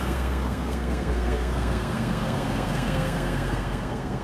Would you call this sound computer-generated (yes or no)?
yes